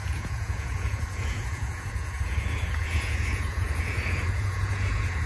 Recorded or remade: remade